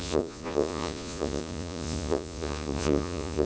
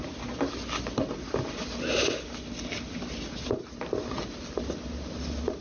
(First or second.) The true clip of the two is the second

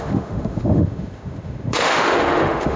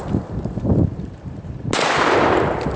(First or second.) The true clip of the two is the second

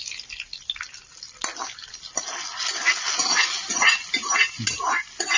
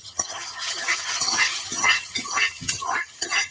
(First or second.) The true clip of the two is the first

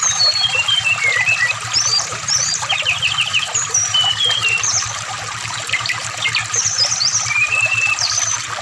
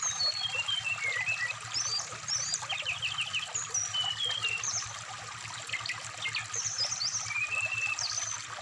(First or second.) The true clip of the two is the second